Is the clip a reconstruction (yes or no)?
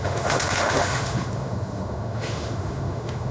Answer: yes